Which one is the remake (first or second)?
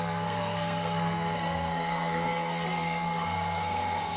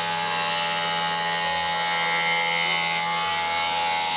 first